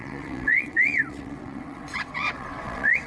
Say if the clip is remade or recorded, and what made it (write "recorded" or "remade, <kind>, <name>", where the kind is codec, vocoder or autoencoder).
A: remade, vocoder, WaveNeXt